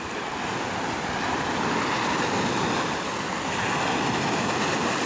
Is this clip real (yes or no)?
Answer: yes